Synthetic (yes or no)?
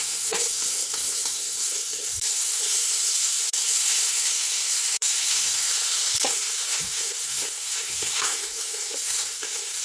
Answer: yes